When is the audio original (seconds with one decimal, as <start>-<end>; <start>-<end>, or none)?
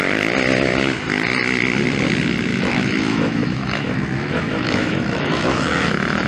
0.0-2.5